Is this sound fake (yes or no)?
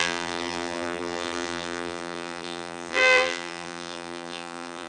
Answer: yes